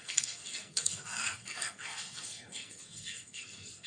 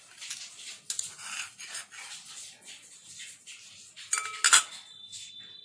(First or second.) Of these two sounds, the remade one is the first